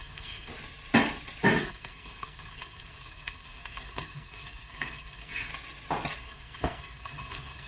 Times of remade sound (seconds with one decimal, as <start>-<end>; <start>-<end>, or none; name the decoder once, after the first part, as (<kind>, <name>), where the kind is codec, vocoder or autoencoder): 0.0-0.5 (codec, SNAC); 1.6-5.5; 6.2-7.7